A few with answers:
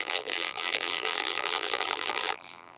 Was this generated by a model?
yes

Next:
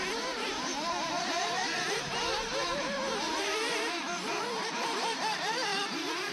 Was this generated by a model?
yes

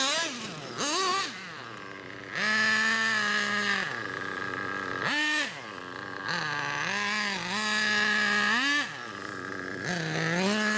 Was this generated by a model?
no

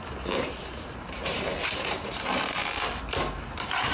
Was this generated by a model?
yes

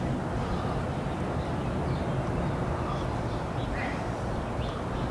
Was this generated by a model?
yes